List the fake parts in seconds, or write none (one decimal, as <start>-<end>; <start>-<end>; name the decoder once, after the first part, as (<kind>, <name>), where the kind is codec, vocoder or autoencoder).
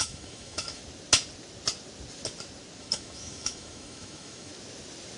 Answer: 0.0-0.8 (autoencoder, DAC-VAE); 2.8-4.5